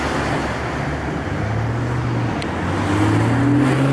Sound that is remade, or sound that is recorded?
recorded